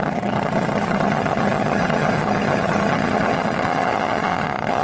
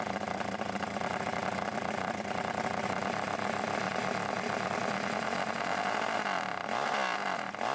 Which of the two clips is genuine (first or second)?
second